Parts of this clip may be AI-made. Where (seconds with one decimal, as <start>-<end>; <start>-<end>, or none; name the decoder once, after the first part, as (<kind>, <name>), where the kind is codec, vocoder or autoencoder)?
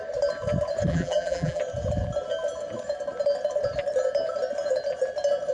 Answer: 0.9-1.6 (vocoder, BigVGAN v2)